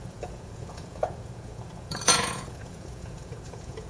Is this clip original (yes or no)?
no